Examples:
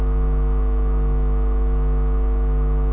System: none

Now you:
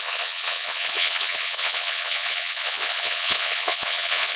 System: vocoder, Vocos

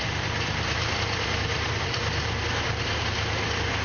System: vocoder, BigVGAN v2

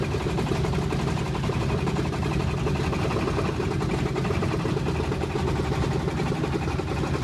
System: none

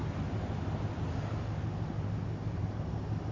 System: none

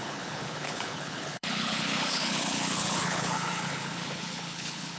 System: codec, HILCodec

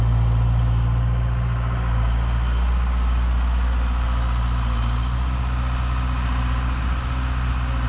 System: none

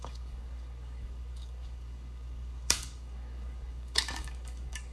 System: codec, DAC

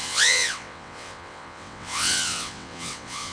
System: vocoder, WaveNeXt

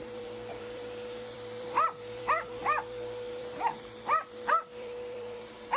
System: vocoder, BigVGAN v2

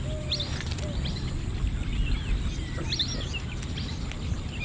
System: none